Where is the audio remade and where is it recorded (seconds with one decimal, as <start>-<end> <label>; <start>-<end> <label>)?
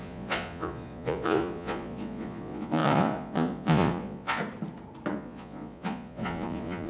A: 0.0-4.4 remade; 4.4-5.1 recorded; 5.1-6.9 remade